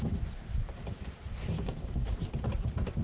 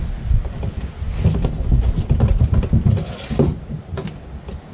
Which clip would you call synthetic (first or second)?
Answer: first